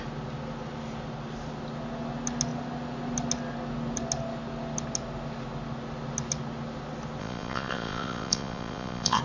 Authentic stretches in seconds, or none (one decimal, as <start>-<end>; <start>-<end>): 0.0-7.2